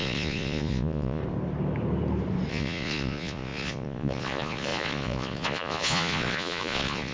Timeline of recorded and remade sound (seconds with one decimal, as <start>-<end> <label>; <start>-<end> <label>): 0.0-1.2 remade; 1.2-2.5 recorded; 2.5-7.1 remade